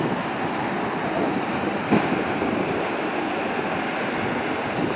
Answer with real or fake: real